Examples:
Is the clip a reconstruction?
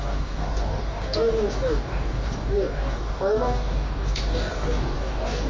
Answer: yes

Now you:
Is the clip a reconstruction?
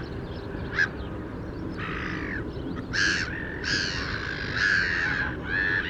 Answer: no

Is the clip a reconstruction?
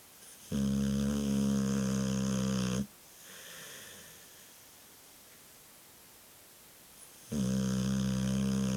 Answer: no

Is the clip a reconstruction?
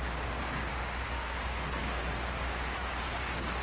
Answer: yes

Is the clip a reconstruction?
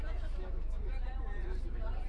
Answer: yes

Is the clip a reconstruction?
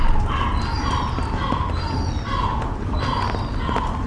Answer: no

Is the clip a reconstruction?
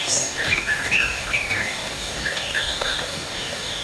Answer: yes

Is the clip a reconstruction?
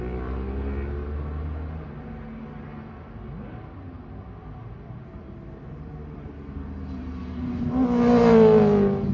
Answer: no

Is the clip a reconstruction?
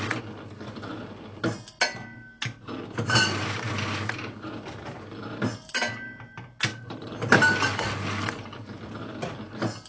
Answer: no